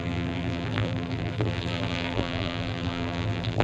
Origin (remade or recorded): remade